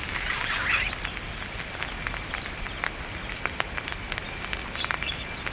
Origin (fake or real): real